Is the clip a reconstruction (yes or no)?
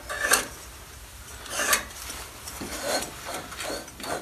yes